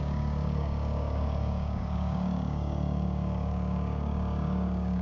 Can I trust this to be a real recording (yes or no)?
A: no